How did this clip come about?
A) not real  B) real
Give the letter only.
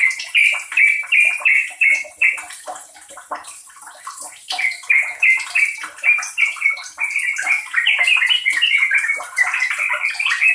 A